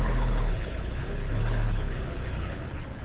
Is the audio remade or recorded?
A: remade